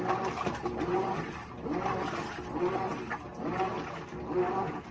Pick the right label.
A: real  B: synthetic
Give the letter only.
A